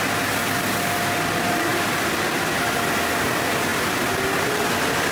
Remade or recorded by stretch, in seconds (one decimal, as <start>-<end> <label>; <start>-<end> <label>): 0.0-3.7 recorded; 3.7-4.5 remade; 4.5-5.1 recorded